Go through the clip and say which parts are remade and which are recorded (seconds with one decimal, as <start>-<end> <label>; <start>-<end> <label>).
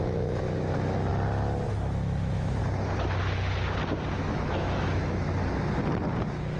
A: 0.0-1.1 remade; 1.1-1.7 recorded; 1.7-2.6 remade; 2.6-4.3 recorded; 4.3-5.4 remade; 5.4-6.6 recorded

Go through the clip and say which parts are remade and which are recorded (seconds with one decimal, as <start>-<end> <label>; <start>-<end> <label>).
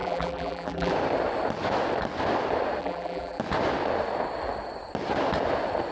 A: 0.0-0.9 remade; 0.9-2.8 recorded; 2.8-3.4 remade; 3.4-5.9 recorded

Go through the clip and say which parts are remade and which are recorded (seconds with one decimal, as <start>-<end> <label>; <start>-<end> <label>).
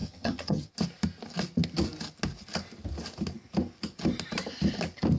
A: 0.0-0.7 remade; 0.7-5.2 recorded